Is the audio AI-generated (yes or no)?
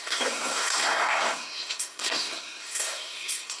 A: yes